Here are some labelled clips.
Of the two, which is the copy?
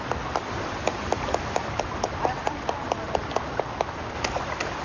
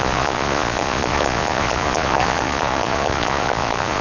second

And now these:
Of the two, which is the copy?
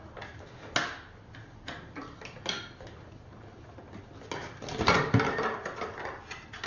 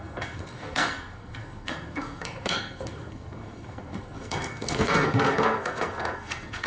second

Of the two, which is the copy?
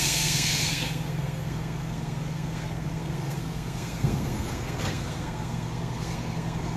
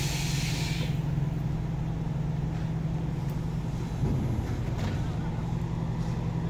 first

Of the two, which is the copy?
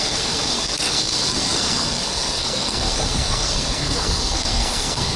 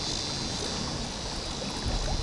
first